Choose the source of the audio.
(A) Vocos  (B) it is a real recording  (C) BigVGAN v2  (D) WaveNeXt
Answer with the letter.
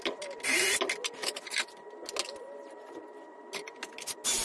B